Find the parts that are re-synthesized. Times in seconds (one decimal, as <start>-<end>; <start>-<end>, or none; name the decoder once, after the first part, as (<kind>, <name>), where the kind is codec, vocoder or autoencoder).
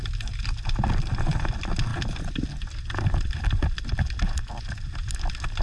none